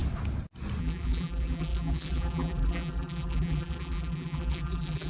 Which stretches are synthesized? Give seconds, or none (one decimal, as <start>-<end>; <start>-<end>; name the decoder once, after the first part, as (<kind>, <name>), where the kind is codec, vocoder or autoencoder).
0.8-5.1 (vocoder, BigVGAN v2)